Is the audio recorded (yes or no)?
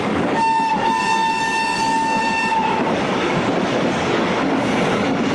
no